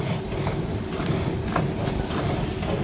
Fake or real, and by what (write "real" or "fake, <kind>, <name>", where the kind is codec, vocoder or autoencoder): real